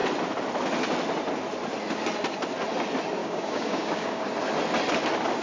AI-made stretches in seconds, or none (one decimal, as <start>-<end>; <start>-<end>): 3.2-4.3